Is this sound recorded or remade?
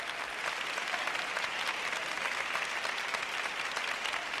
recorded